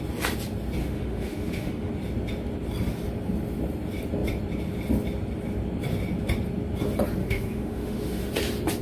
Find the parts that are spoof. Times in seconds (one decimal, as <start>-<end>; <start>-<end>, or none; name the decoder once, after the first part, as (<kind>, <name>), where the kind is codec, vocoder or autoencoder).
0.8-1.9 (autoencoder, DAC-VAE); 7.2-8.3